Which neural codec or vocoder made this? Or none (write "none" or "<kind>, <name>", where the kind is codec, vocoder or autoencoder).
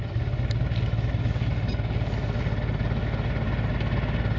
none